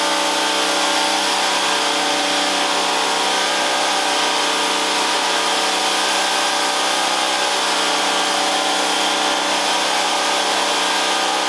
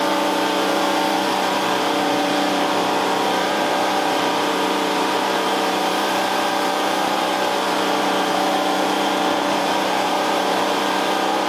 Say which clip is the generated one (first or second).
second